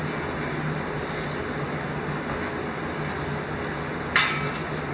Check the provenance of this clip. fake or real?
real